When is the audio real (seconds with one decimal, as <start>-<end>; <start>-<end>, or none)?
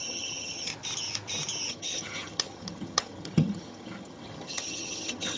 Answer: 0.7-1.7